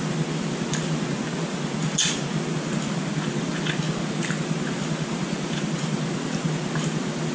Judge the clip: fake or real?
real